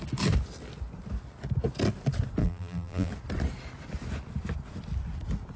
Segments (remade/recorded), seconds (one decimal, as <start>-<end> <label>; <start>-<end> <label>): 0.0-2.4 recorded; 2.4-3.1 remade; 3.1-5.6 recorded